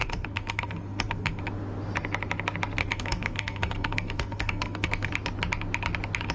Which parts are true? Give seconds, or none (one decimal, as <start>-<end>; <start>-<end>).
1.4-2.8; 5.1-6.3